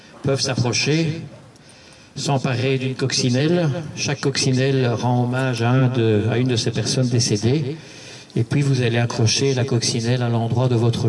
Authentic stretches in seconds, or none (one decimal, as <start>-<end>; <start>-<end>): 0.0-8.7; 9.6-11.1